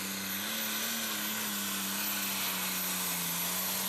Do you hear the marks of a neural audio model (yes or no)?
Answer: no